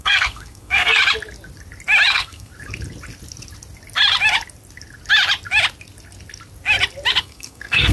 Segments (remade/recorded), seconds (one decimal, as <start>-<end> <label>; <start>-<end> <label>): 0.0-1.0 remade; 1.0-2.1 recorded; 2.1-2.5 remade; 2.5-7.2 recorded; 7.2-7.9 remade